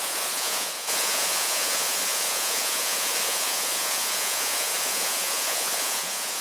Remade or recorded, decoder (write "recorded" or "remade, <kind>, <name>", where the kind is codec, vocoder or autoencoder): remade, vocoder, Vocos